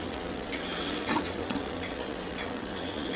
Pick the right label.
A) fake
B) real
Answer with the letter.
A